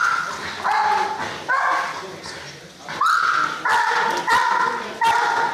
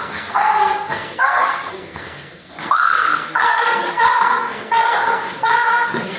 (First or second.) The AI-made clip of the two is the second